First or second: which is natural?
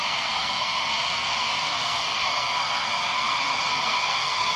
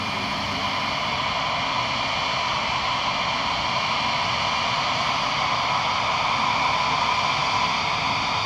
second